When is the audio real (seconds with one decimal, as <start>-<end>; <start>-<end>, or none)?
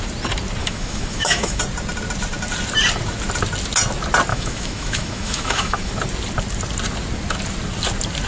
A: 0.0-0.6; 1.6-4.3; 5.9-8.3